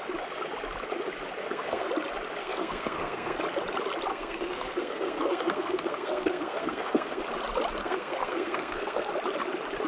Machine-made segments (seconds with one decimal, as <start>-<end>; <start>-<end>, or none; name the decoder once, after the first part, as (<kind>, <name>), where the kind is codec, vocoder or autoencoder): 1.4-1.9 (codec, SNAC); 2.4-3.4; 4.1-7.2; 7.8-9.1